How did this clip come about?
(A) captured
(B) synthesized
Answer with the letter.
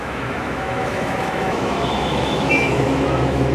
B